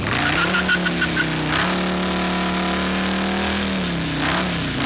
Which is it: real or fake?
real